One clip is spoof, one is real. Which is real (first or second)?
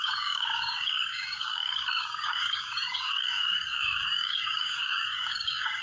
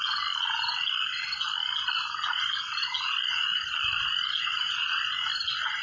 second